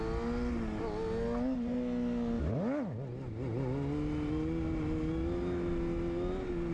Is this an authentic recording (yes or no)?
yes